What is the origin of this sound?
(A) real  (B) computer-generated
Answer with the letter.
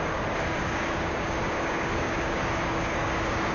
B